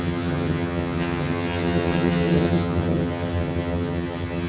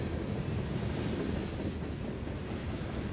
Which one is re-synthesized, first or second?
first